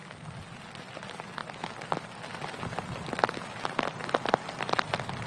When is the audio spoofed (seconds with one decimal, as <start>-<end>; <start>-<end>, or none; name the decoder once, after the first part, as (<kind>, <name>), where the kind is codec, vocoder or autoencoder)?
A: none